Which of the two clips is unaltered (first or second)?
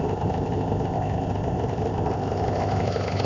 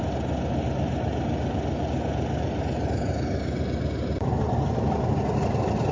second